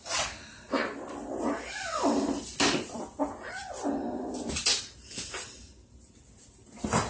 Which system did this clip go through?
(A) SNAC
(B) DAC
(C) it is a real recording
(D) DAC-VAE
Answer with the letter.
C